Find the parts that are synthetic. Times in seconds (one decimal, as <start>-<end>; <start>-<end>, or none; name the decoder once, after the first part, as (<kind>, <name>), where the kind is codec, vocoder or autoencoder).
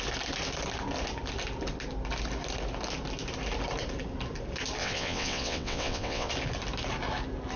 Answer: 4.8-6.3 (vocoder, WaveNeXt)